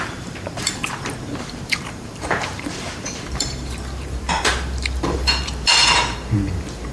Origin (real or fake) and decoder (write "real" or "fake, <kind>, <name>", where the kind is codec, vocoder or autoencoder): fake, vocoder, BigVGAN v2